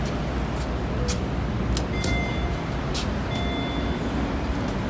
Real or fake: real